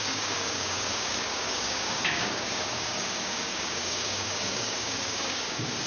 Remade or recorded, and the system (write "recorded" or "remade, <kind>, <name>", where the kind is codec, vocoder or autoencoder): remade, codec, DAC